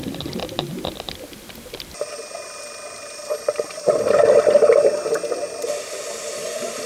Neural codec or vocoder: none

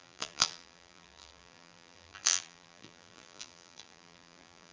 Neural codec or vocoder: vocoder, BigVGAN v2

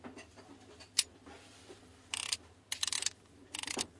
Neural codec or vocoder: none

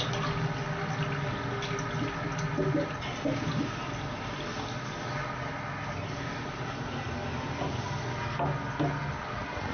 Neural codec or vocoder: none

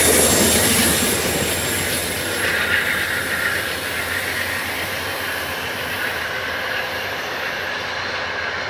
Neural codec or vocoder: none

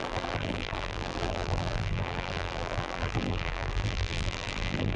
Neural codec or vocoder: vocoder, BigVGAN v2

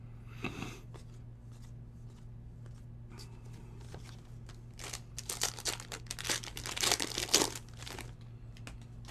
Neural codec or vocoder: none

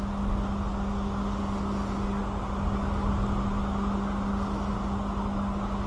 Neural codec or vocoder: none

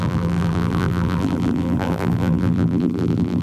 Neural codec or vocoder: vocoder, BigVGAN v2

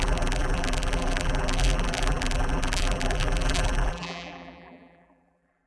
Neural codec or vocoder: vocoder, BigVGAN v2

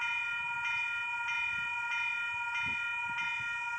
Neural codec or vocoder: none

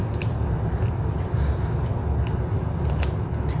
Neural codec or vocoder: none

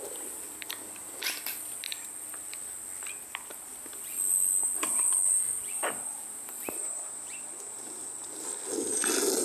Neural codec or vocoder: none